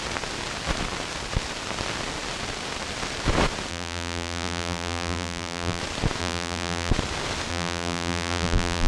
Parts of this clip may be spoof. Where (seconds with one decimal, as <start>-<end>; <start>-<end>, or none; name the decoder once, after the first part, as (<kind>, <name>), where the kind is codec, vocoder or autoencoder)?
3.7-5.8 (vocoder, BigVGAN v2); 6.2-6.9; 7.5-8.9